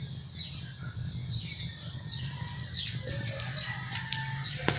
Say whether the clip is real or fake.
real